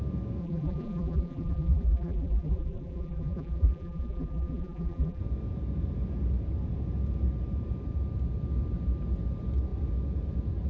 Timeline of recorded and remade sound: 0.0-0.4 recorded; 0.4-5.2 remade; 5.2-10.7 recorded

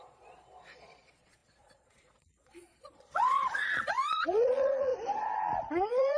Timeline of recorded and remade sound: 0.0-4.9 remade; 4.9-5.7 recorded; 5.7-6.2 remade

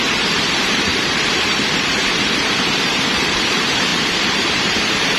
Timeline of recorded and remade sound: 0.0-5.2 remade

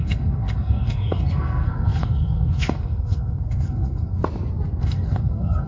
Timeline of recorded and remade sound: 0.0-4.2 remade; 4.2-4.8 recorded; 4.8-5.7 remade